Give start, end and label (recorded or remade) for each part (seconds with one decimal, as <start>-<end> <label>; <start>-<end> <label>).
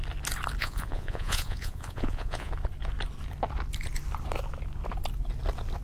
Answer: 0.0-0.6 recorded; 0.6-2.5 remade; 2.5-5.8 recorded